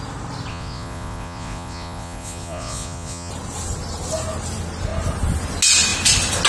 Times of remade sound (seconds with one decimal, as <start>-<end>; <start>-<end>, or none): 0.5-3.3